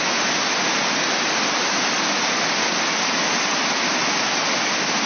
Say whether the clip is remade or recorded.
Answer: recorded